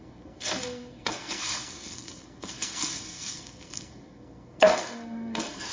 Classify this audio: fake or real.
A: fake